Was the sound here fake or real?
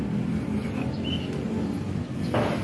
real